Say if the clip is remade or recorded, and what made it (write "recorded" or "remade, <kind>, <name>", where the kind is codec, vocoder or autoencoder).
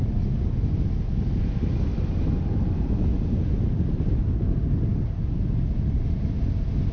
recorded